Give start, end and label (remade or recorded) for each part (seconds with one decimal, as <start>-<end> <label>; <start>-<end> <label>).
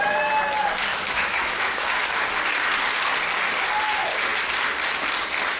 0.0-0.9 recorded; 0.9-2.0 remade; 2.0-5.6 recorded